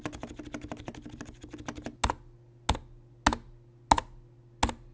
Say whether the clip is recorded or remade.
recorded